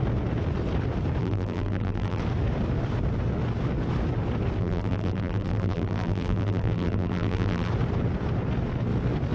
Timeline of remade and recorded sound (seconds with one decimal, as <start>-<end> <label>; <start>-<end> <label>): 0.0-1.2 recorded; 1.2-2.2 remade; 2.2-4.6 recorded; 4.6-7.7 remade; 7.7-9.3 recorded